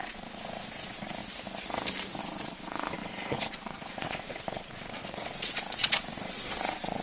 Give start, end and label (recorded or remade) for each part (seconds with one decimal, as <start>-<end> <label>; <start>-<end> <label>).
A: 0.0-1.2 remade; 1.2-2.2 recorded; 2.2-7.0 remade